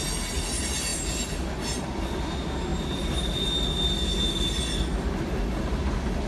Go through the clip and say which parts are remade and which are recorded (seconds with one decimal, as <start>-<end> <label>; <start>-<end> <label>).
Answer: 0.0-6.3 recorded